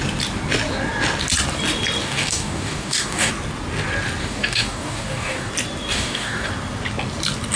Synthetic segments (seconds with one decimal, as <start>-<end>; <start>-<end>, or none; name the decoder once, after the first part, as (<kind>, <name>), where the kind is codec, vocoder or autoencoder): 2.0-3.3 (codec, DAC); 4.2-5.5; 5.9-6.5